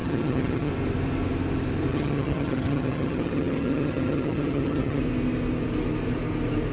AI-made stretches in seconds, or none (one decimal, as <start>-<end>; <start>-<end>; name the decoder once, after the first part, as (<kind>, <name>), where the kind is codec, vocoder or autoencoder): 0.0-0.7 (vocoder, HiFi-GAN); 1.9-5.0